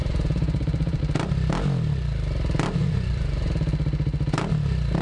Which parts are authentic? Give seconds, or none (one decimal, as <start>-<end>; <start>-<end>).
1.0-2.8; 3.5-5.0